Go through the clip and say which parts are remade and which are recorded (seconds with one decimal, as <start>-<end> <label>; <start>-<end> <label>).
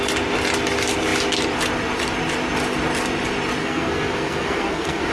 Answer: 0.0-3.6 recorded; 3.6-5.1 remade